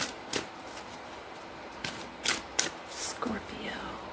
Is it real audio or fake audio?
real